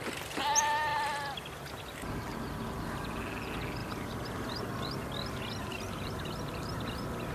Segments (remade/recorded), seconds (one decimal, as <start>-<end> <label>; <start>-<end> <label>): 0.0-3.8 recorded; 3.8-4.6 remade; 4.6-5.6 recorded; 5.6-6.3 remade; 6.3-7.3 recorded